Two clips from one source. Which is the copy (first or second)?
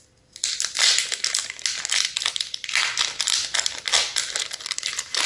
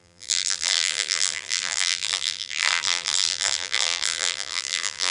second